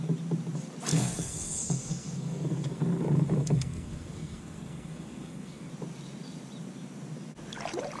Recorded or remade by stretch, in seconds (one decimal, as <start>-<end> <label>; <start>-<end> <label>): 0.0-0.9 recorded; 0.9-5.7 remade; 5.7-8.0 recorded